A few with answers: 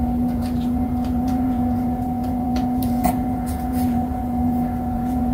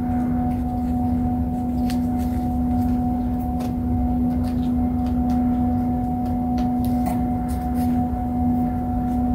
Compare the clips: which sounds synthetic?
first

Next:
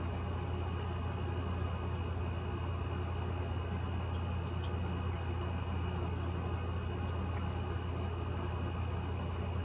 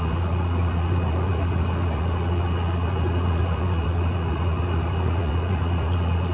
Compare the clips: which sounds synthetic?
second